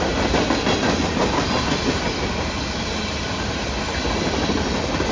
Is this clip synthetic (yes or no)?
no